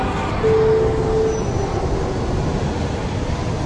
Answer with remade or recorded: recorded